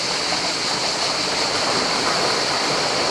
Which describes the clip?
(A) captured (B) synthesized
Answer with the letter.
A